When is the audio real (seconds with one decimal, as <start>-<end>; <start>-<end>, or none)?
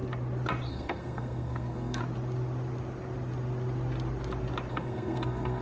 0.0-0.7; 2.0-4.7